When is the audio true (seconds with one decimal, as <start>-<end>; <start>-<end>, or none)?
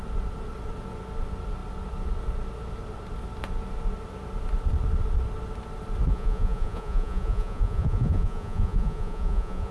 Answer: 0.0-6.1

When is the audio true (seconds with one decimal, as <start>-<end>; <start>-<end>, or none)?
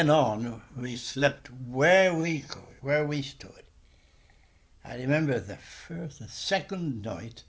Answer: 0.0-0.8; 1.4-2.2; 2.8-7.5